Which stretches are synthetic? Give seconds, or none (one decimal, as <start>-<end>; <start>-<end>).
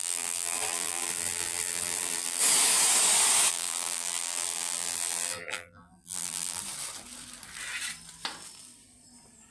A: 0.0-2.4; 3.5-6.6